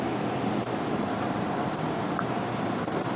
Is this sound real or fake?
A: real